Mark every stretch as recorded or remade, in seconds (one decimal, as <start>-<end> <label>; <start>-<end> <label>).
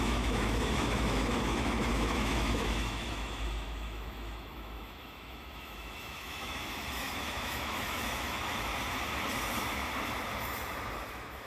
0.0-8.7 remade; 8.7-11.1 recorded; 11.1-11.5 remade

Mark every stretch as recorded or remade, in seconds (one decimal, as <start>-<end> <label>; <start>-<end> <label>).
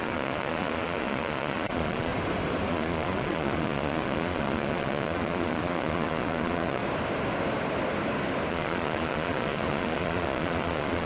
0.0-2.1 remade; 2.1-2.7 recorded; 2.7-6.8 remade; 6.8-8.5 recorded; 8.5-11.1 remade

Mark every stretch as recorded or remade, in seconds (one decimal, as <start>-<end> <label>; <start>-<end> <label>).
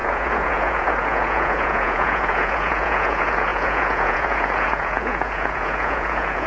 0.0-6.5 remade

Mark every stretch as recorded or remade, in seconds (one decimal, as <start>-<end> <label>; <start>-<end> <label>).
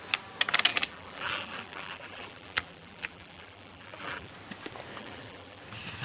0.0-0.7 recorded; 0.7-4.3 remade; 4.3-5.0 recorded; 5.0-5.6 remade; 5.6-6.0 recorded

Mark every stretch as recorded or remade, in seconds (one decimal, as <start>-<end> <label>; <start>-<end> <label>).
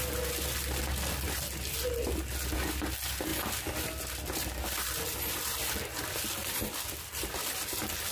0.0-8.1 recorded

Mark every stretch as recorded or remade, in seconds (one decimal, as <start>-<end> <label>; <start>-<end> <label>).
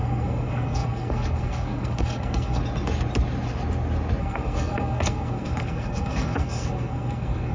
0.0-2.6 remade; 2.6-4.2 recorded; 4.2-7.5 remade